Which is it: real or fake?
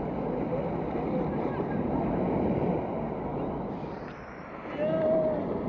real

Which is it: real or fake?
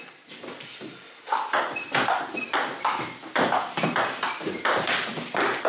real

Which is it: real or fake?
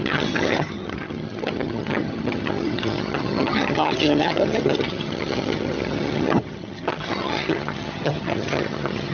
fake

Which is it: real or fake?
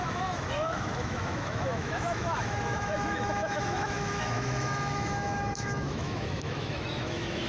fake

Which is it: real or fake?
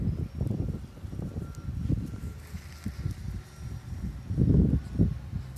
real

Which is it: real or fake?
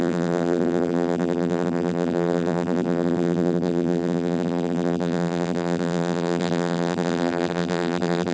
fake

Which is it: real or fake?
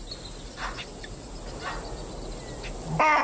real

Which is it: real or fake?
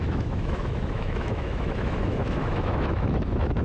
fake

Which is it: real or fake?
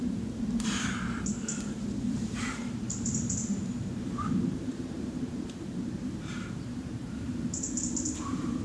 fake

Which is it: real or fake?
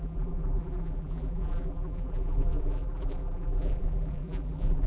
fake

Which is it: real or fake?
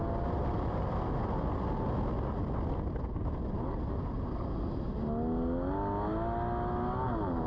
real